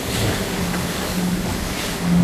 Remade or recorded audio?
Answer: remade